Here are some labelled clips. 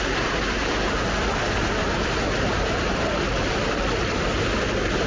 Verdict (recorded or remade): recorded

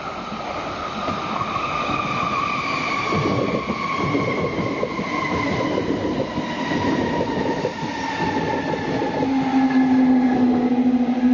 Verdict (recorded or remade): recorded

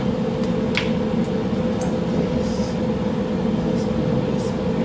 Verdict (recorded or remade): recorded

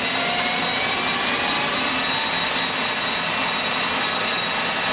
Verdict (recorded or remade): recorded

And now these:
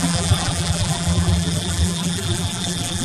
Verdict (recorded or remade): remade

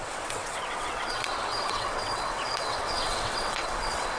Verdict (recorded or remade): remade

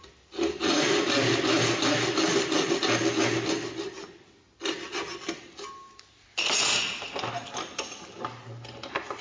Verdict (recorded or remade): recorded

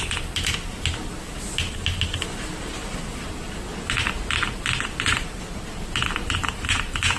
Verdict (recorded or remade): recorded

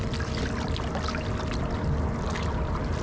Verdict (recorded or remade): recorded